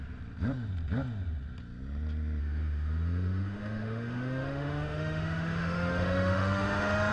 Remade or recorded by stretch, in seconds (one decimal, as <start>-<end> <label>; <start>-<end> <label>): 0.0-2.4 recorded; 2.4-7.1 remade